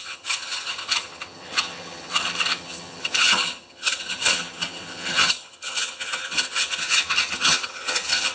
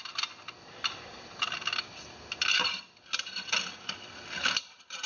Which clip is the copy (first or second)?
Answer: first